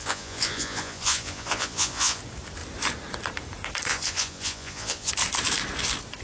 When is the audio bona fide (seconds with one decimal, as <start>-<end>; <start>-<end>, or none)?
2.2-3.9; 5.1-6.2